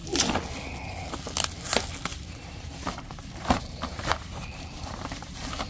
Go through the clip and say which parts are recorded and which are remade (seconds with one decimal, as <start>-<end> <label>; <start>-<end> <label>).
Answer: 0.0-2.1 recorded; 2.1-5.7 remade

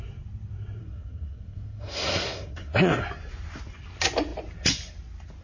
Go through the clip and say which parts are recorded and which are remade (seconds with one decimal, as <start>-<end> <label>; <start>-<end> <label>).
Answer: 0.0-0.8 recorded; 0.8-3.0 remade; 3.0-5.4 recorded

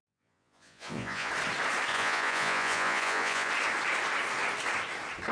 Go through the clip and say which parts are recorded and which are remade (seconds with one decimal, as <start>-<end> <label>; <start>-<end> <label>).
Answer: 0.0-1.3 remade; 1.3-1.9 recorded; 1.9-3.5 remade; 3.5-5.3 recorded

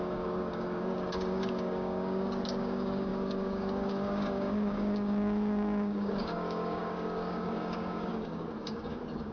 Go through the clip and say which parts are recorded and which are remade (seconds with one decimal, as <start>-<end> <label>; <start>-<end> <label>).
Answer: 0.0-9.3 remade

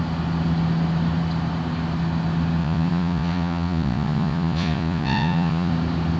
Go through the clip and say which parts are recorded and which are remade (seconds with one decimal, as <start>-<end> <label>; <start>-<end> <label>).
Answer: 0.0-2.6 recorded; 2.6-5.7 remade; 5.7-6.2 recorded

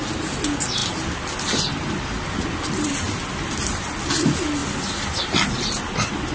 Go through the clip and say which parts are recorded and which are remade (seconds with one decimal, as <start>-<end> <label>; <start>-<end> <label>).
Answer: 0.0-6.3 recorded

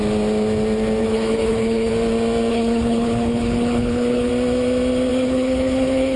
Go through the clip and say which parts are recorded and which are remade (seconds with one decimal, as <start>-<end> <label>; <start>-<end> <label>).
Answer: 0.0-1.0 recorded; 1.0-1.9 remade; 1.9-2.5 recorded; 2.5-4.3 remade; 4.3-5.1 recorded; 5.1-6.2 remade

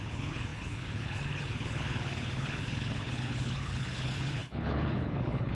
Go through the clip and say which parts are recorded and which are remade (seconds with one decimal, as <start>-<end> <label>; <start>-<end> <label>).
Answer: 0.0-5.5 remade